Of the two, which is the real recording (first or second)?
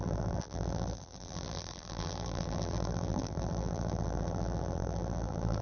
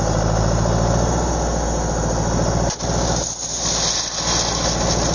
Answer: second